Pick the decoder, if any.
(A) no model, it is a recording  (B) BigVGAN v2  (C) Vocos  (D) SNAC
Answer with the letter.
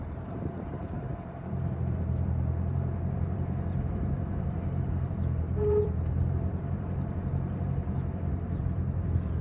B